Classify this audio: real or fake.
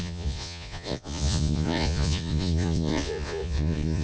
fake